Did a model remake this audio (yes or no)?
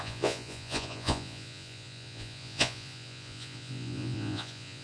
yes